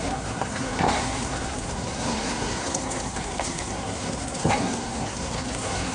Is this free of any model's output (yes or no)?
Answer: no